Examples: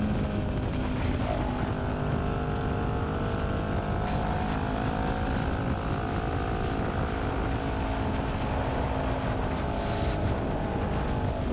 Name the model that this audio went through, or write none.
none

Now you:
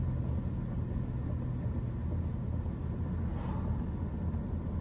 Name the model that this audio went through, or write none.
none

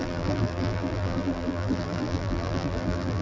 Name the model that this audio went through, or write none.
vocoder, BigVGAN v2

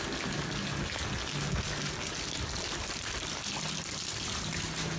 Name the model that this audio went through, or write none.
none